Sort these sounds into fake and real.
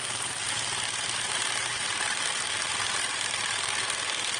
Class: fake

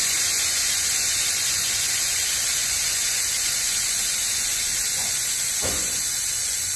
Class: fake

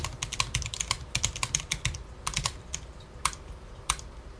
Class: real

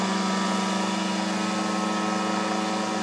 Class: real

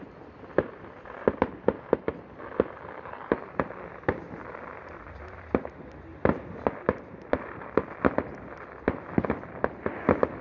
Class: real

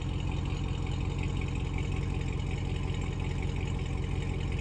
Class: real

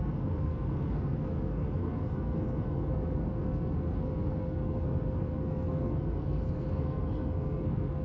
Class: fake